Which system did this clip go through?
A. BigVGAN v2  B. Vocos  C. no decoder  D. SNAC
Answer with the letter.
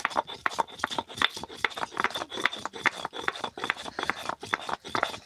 A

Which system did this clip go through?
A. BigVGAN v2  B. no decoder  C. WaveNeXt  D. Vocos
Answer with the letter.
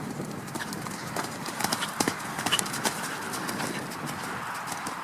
B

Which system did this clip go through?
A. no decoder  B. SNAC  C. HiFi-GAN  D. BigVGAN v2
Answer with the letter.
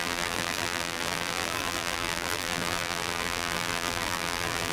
D